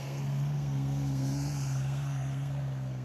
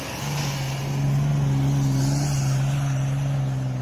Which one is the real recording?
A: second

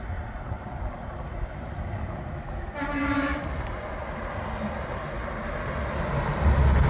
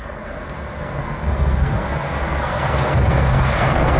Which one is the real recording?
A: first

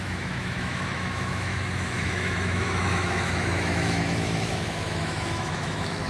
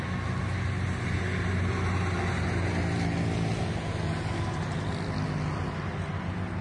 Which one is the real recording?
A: second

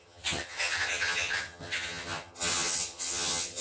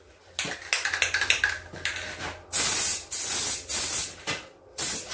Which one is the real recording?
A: second